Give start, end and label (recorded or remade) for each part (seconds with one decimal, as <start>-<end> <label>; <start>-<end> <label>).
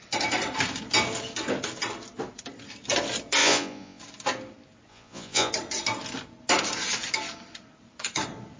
0.0-3.4 recorded; 3.4-4.0 remade; 4.0-4.9 recorded; 4.9-5.5 remade; 5.5-8.6 recorded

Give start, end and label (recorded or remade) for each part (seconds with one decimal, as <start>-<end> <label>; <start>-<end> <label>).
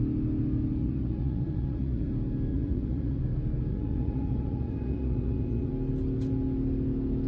0.0-0.8 recorded; 0.8-2.1 remade; 2.1-2.5 recorded; 2.5-3.2 remade; 3.2-3.7 recorded; 3.7-5.7 remade; 5.7-7.3 recorded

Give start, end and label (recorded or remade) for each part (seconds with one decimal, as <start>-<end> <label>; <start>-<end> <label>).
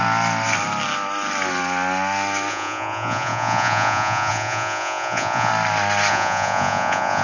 0.0-2.5 recorded; 2.5-5.5 remade; 5.5-6.1 recorded; 6.1-7.2 remade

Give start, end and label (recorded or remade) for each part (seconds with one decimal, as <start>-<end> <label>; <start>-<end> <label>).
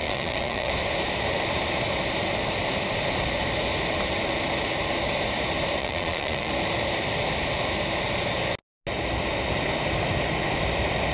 0.0-0.7 remade; 0.7-5.8 recorded; 5.8-6.5 remade; 6.5-11.1 recorded